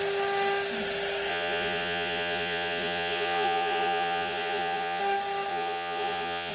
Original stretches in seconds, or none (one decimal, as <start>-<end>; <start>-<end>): 0.0-1.3; 5.0-5.5